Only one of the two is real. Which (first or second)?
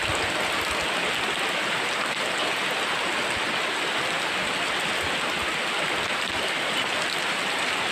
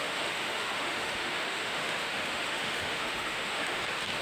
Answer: first